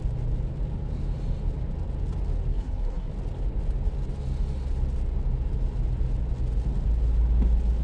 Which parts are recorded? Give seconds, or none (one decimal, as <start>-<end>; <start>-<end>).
0.0-2.5; 3.1-7.8